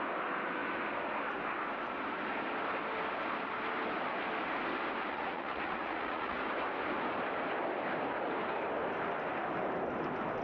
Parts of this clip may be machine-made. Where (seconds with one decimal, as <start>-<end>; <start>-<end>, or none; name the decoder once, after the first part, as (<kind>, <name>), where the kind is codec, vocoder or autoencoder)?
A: 5.1-6.4 (vocoder, Vocos)